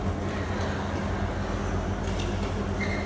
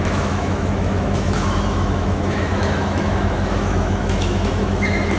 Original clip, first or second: first